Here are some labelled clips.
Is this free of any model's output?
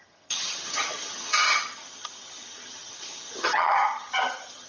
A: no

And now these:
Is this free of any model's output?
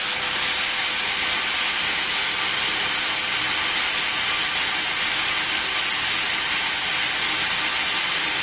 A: yes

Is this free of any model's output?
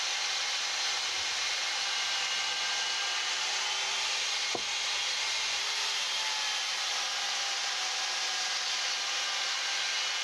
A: yes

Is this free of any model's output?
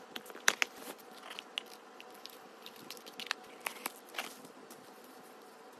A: yes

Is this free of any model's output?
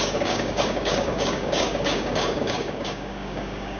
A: no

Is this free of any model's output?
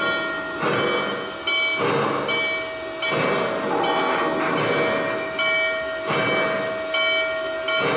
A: yes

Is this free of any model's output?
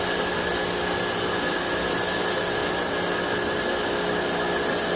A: yes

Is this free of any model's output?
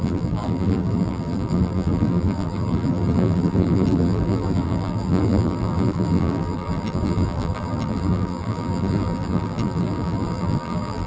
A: no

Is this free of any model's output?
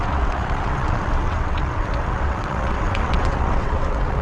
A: no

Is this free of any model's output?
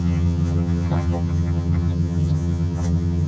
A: no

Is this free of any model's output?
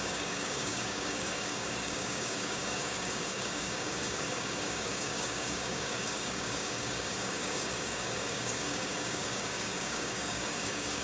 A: no